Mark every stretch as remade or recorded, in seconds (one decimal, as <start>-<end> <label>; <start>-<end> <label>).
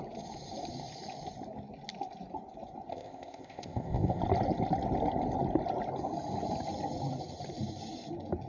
0.0-2.9 recorded; 2.9-4.2 remade; 4.2-8.5 recorded